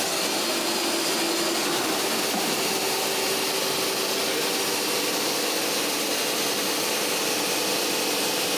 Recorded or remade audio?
recorded